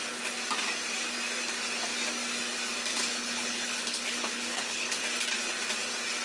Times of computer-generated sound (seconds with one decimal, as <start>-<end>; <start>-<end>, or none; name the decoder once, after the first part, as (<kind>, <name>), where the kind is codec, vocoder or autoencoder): 2.9-5.0 (codec, HILCodec)